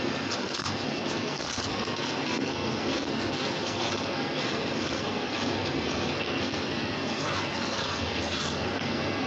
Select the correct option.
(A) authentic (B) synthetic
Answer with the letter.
B